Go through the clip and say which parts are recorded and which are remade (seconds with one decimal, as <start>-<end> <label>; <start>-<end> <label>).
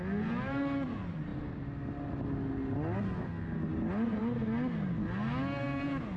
0.0-6.2 recorded